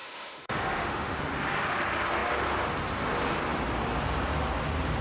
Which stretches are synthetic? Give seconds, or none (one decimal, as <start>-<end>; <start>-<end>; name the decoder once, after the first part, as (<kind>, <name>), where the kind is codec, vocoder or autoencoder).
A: 0.0-1.2 (autoencoder, DAC-VAE)